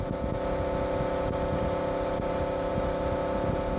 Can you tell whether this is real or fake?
real